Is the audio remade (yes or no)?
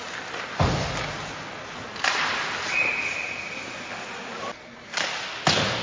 no